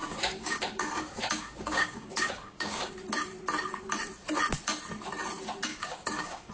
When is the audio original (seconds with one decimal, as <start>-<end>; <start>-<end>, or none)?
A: 2.9-5.7